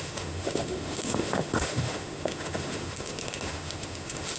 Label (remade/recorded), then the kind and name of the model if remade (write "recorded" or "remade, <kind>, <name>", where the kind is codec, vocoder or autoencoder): remade, autoencoder, DAC-VAE